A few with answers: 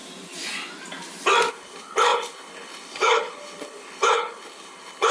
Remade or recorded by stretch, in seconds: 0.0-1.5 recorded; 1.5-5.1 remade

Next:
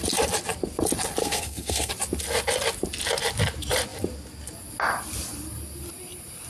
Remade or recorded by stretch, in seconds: 0.0-1.2 recorded; 1.2-1.9 remade; 1.9-6.5 recorded

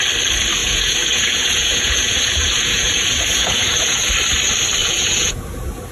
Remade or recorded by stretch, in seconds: 0.0-0.6 recorded; 0.6-4.1 remade; 4.1-4.8 recorded; 4.8-5.4 remade; 5.4-5.9 recorded

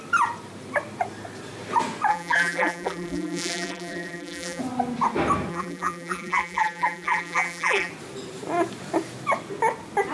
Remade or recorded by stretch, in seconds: 0.0-2.1 recorded; 2.1-4.6 remade; 4.6-5.5 recorded; 5.5-7.9 remade; 7.9-10.1 recorded

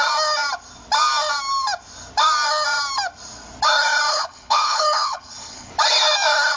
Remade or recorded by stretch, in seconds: 0.0-4.1 recorded; 4.1-5.7 remade; 5.7-6.6 recorded

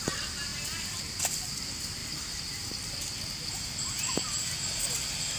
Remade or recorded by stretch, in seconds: 0.0-5.4 recorded

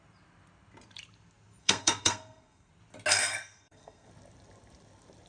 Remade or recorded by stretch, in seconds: 0.0-1.6 recorded; 1.6-2.7 remade; 2.7-3.1 recorded; 3.1-4.1 remade; 4.1-5.3 recorded